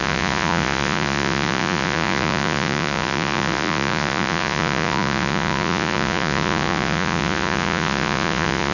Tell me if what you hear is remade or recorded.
remade